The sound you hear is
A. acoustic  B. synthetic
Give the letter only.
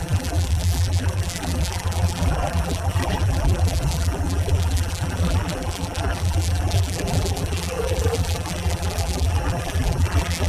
B